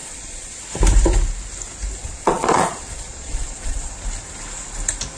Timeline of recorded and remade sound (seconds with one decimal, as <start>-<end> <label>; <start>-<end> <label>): 0.0-0.6 remade; 0.6-2.0 recorded; 2.0-3.9 remade; 3.9-5.2 recorded